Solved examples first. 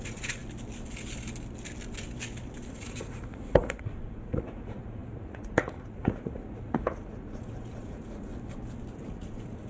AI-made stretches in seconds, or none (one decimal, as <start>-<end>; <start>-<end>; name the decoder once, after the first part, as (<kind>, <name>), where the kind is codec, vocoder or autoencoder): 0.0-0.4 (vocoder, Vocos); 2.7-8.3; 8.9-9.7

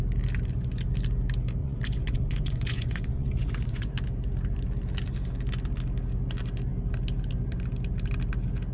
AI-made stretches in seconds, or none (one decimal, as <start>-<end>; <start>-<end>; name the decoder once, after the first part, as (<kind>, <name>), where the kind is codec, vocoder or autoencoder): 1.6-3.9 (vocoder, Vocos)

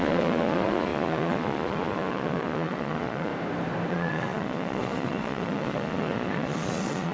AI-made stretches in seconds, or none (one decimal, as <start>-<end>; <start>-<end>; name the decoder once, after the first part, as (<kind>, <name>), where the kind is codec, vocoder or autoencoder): 0.0-3.3 (vocoder, Vocos); 3.9-7.1